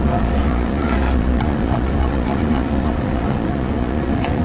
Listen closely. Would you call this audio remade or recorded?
remade